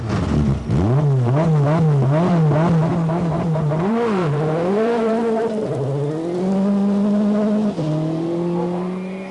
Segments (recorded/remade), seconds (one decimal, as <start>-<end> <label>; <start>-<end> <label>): 0.0-2.9 recorded; 2.9-5.4 remade; 5.4-9.3 recorded